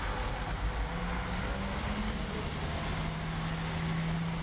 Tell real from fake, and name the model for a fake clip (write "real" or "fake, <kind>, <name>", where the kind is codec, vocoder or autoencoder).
real